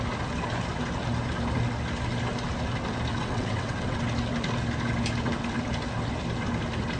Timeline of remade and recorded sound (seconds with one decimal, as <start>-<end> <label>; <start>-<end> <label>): 0.0-3.1 recorded; 3.1-4.0 remade; 4.0-7.0 recorded